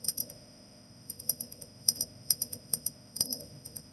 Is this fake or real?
fake